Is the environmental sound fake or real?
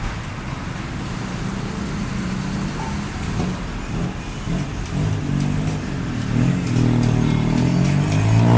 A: real